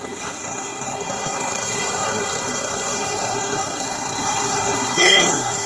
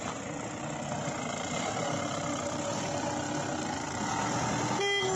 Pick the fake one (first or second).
first